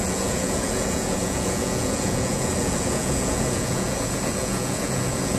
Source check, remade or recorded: remade